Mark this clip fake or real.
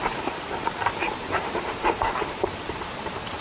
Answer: fake